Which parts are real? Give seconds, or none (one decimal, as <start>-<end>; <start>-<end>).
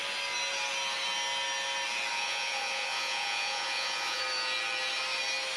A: 0.0-2.1; 4.2-5.6